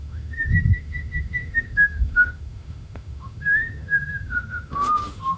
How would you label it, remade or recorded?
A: remade